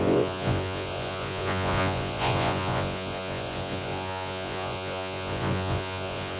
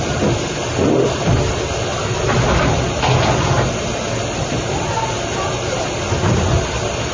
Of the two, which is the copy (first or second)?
first